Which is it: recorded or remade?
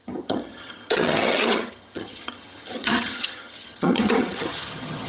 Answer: remade